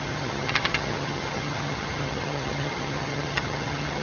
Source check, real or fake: fake